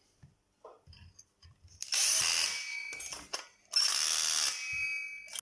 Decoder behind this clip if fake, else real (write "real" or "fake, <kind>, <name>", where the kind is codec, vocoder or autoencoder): real